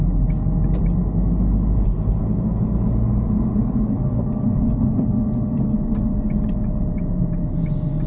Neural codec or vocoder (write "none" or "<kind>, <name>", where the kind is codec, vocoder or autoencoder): none